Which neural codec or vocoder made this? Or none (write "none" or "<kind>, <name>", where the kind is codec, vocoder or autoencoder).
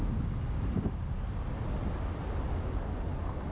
none